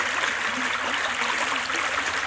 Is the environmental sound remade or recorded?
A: recorded